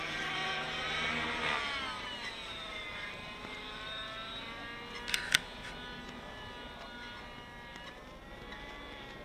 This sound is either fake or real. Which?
real